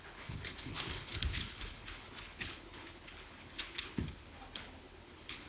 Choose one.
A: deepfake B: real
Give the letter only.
A